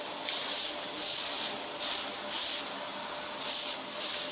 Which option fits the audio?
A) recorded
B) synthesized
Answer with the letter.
A